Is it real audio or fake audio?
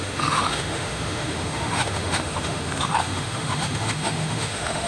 fake